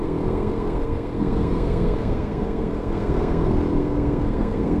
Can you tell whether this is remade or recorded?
remade